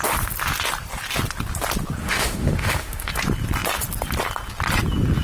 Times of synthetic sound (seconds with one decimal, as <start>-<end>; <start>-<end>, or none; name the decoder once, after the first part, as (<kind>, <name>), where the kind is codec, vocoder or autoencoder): 2.0-3.1 (autoencoder, DAC-VAE)